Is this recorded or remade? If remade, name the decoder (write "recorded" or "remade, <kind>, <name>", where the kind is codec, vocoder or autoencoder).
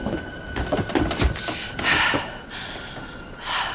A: recorded